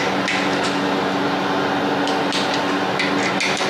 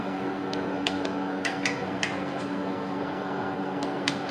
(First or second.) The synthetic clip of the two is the second